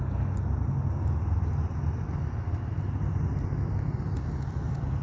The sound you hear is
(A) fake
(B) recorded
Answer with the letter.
B